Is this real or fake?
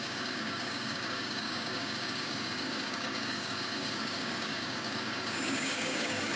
fake